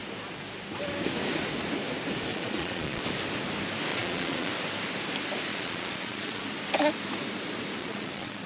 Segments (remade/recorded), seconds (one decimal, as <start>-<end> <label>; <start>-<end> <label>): 0.0-2.3 recorded; 2.3-3.0 remade; 3.0-3.9 recorded; 3.9-4.5 remade; 4.5-5.5 recorded; 5.5-6.4 remade; 6.4-7.8 recorded; 7.8-8.5 remade